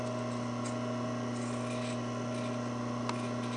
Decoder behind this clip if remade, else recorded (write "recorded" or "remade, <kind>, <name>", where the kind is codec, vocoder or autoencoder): recorded